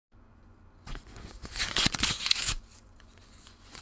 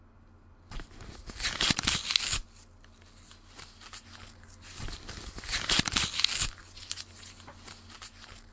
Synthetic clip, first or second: first